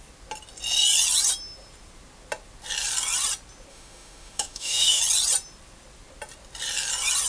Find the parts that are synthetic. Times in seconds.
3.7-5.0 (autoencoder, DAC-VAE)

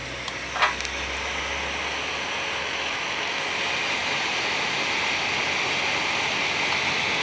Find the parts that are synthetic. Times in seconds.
2.6-3.4 (autoencoder, DAC-VAE)